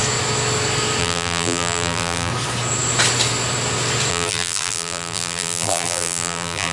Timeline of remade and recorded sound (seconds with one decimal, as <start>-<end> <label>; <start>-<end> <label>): 0.0-1.0 recorded; 1.0-2.3 remade; 2.3-4.1 recorded; 4.1-6.7 remade